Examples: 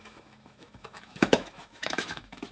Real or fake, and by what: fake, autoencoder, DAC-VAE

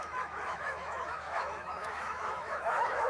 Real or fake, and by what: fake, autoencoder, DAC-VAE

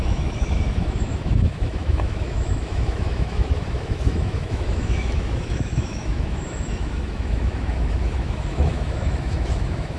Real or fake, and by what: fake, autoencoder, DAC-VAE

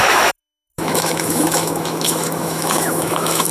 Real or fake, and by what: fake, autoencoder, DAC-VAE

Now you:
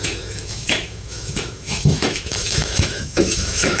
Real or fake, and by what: fake, autoencoder, DAC-VAE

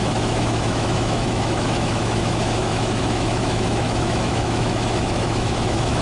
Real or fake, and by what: fake, autoencoder, DAC-VAE